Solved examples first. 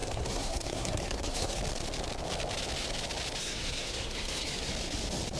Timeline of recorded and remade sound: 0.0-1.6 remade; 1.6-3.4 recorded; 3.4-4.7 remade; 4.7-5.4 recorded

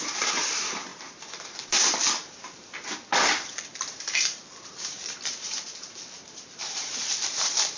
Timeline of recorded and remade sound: 0.0-7.8 remade

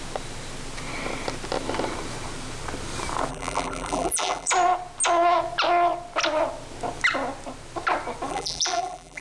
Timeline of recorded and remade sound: 0.0-3.3 recorded; 3.3-4.5 remade; 4.5-8.3 recorded; 8.3-9.2 remade

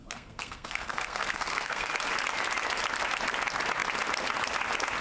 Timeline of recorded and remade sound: 0.0-1.9 remade; 1.9-5.0 recorded

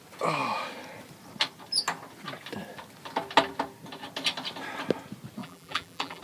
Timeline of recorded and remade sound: 0.0-5.4 recorded; 5.4-6.2 remade